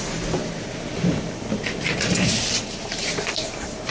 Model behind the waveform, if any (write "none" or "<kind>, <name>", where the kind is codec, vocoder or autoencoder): vocoder, BigVGAN v2